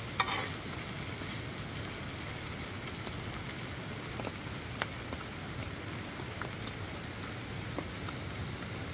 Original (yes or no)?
yes